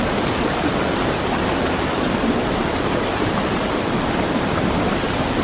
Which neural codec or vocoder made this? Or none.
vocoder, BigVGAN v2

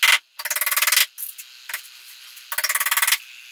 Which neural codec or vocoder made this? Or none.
none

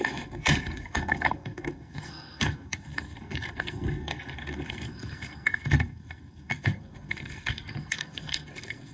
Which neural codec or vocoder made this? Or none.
codec, SNAC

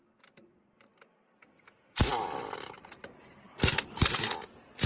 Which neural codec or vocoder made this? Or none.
none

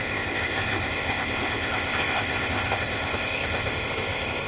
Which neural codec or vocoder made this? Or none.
codec, ZipCodec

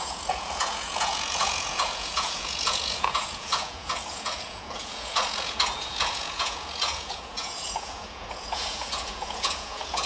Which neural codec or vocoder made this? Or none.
vocoder, Vocos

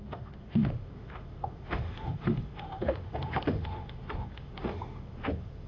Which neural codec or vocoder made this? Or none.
autoencoder, DAC-VAE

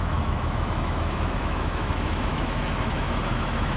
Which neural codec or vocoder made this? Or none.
autoencoder, DAC-VAE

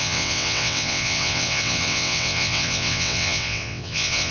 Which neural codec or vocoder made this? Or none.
vocoder, WaveNeXt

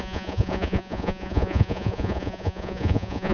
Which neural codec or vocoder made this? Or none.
vocoder, Vocos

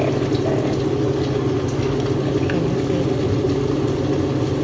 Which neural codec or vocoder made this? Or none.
none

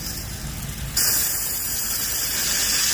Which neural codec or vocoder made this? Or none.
none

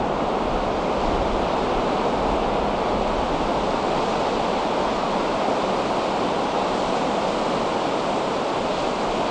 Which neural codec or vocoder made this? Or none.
none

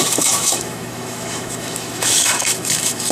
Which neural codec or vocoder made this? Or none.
autoencoder, DAC-VAE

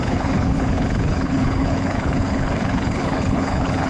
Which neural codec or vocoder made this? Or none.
codec, HILCodec